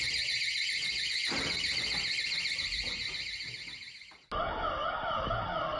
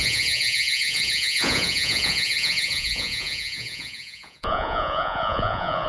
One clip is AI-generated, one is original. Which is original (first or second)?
first